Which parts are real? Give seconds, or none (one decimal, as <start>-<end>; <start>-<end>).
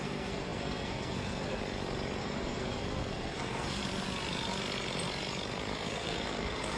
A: 1.6-2.2; 3.8-5.7